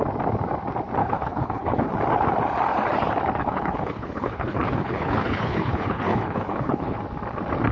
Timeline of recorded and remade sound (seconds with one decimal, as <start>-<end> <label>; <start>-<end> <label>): 0.0-1.0 recorded; 1.0-1.9 remade; 1.9-3.4 recorded; 3.4-7.0 remade; 7.0-7.7 recorded